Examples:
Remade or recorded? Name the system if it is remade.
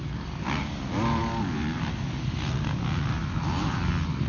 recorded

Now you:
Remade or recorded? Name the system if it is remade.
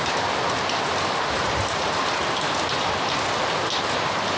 remade, vocoder, BigVGAN v2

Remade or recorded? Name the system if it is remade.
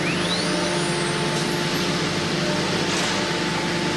recorded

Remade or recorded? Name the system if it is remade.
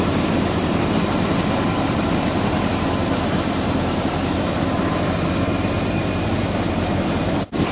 remade, vocoder, BigVGAN v2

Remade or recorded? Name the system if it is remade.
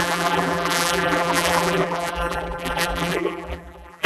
remade, vocoder, BigVGAN v2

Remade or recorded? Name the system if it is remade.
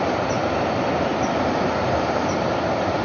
recorded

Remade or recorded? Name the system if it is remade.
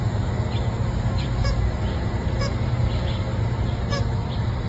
remade, vocoder, BigVGAN v2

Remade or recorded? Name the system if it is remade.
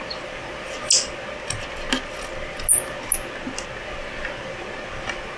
recorded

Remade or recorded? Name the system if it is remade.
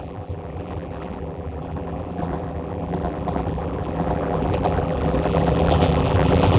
remade, vocoder, BigVGAN v2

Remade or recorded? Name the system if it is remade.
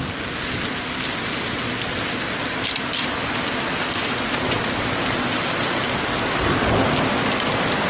recorded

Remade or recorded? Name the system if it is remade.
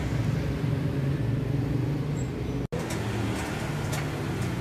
recorded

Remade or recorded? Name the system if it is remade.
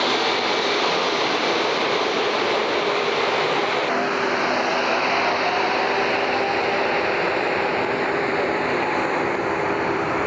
remade, vocoder, BigVGAN v2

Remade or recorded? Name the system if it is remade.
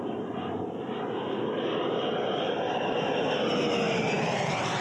recorded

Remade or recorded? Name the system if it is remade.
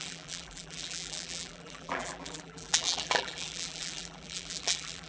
remade, vocoder, BigVGAN v2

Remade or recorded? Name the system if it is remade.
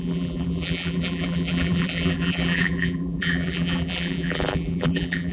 remade, vocoder, BigVGAN v2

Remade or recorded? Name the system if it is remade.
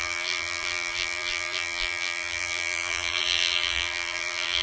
remade, vocoder, BigVGAN v2